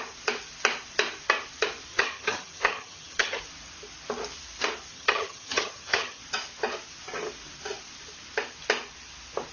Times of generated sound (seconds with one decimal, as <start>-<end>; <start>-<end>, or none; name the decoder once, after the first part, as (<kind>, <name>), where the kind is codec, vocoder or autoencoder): 1.9-3.4 (vocoder, HiFi-GAN); 4.9-6.2